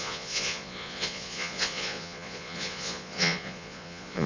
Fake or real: fake